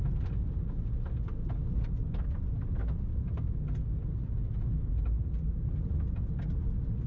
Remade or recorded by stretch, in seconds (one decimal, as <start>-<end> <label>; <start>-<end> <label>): 0.0-7.1 recorded